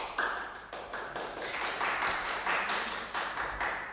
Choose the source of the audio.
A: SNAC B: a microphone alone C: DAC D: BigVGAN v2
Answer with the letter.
D